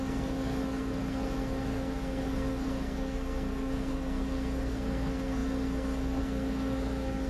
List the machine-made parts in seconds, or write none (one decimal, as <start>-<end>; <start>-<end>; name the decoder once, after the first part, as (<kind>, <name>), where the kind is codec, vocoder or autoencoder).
0.0-7.3 (codec, SNAC)